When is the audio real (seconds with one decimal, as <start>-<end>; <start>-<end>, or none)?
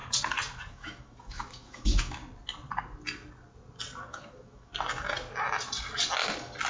0.0-0.7; 2.2-4.1; 4.7-6.7